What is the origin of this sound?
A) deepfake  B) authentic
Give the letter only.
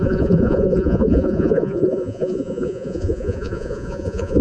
A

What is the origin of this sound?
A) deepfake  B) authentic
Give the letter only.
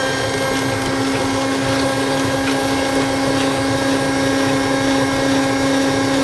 B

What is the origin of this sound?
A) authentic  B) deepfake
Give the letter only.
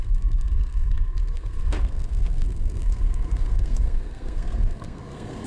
B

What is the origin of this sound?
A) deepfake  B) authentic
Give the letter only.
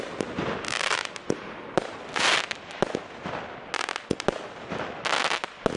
B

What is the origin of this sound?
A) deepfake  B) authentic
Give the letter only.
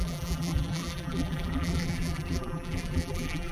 A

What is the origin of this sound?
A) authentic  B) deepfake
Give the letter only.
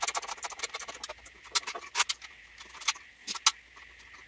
A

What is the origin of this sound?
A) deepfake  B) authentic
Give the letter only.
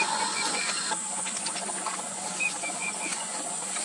A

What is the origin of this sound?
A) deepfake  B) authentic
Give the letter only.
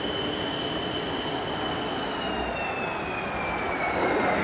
B